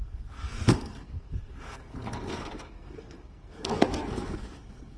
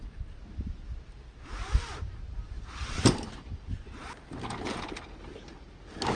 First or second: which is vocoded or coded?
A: first